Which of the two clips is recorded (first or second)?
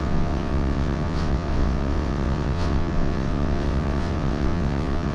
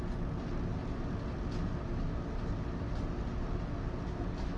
second